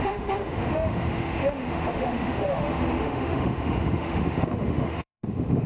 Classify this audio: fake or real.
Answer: fake